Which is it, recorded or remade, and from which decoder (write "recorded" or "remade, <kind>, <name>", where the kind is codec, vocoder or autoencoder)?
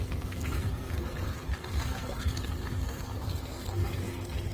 remade, codec, SNAC